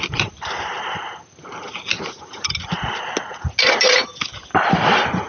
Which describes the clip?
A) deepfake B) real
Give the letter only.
B